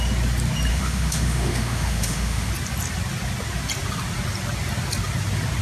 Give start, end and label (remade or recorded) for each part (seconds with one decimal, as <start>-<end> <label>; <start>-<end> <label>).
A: 0.0-0.7 recorded; 0.7-2.5 remade; 2.5-5.6 recorded

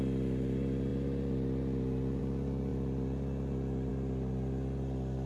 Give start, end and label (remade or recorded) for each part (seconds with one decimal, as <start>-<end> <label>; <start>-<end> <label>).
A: 0.0-5.3 recorded

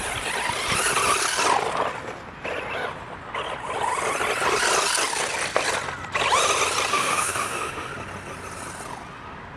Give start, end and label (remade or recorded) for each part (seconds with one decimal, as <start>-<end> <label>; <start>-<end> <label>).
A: 0.0-6.9 recorded; 6.9-7.9 remade; 7.9-9.6 recorded

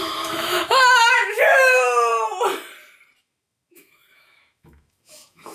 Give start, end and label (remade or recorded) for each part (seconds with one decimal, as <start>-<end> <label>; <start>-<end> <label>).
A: 0.0-2.1 remade; 2.1-3.2 recorded; 3.2-5.5 remade

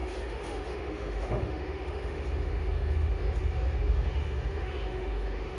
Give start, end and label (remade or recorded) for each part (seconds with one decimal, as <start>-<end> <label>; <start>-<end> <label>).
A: 0.0-5.6 remade

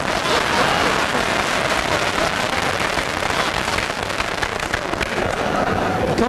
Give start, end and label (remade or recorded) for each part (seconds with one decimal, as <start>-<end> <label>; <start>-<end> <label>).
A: 0.0-6.3 recorded

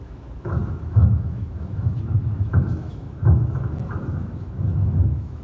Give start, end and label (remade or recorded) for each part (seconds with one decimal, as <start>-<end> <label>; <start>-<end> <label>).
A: 0.0-5.4 remade